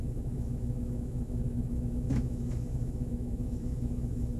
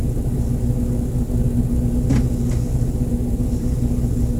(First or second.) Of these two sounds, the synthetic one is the first